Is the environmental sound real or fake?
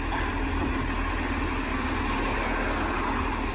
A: real